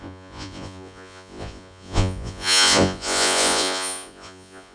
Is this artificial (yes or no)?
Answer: yes